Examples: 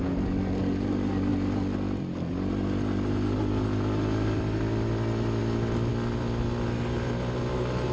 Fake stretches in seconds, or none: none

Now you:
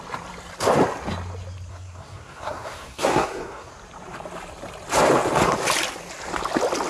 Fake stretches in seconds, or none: 1.7-3.7 (codec, SNAC)